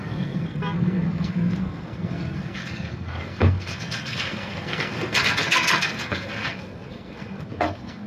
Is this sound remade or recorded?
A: remade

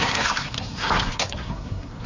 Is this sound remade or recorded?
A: remade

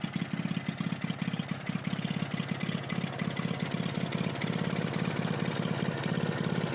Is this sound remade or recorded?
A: recorded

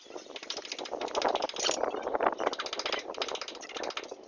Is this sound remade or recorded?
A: recorded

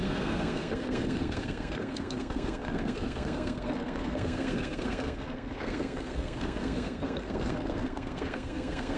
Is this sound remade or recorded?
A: remade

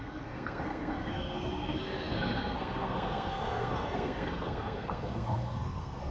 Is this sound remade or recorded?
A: remade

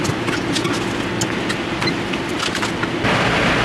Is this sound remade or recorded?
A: recorded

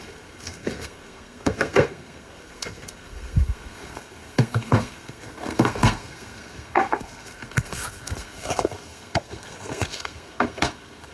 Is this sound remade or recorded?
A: remade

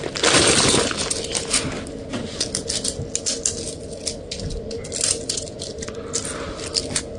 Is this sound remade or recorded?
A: recorded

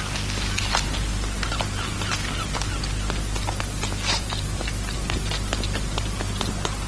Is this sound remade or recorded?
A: recorded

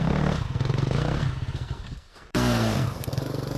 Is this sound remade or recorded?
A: remade